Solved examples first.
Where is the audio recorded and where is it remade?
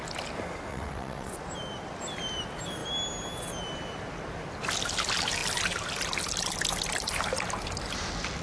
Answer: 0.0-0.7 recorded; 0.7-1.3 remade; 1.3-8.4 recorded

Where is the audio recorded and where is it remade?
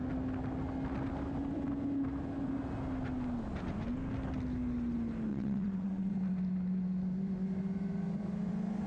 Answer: 0.0-5.3 recorded; 5.3-6.1 remade; 6.1-8.9 recorded